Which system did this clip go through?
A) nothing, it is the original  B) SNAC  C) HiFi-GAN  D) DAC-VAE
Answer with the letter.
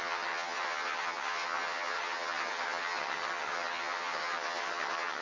C